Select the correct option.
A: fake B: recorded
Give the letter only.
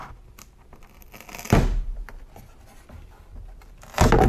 B